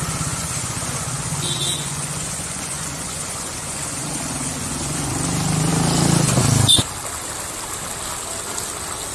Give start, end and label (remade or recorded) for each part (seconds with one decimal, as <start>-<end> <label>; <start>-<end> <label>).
0.0-5.1 remade; 5.1-9.1 recorded